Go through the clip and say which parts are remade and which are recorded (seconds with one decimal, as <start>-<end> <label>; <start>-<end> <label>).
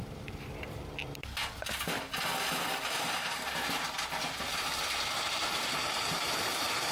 0.0-1.4 remade; 1.4-5.5 recorded; 5.5-6.9 remade